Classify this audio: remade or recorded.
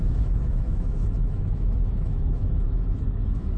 remade